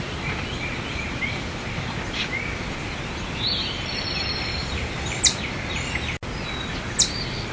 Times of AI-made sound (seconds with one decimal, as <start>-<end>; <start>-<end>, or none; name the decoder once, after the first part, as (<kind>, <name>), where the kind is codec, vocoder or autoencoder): 4.6-5.4 (vocoder, BigVGAN v2)